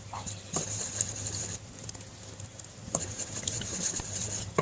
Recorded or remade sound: remade